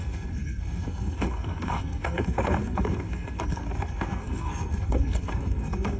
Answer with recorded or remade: remade